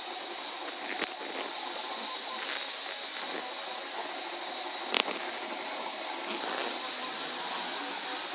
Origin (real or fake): real